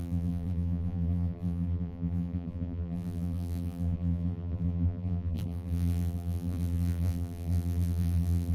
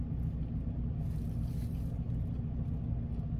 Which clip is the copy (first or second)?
first